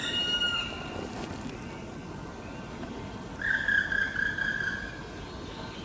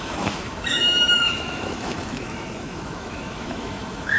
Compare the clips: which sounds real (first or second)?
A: first